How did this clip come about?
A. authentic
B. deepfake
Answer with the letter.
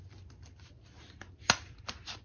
A